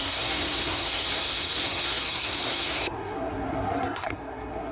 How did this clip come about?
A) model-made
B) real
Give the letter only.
A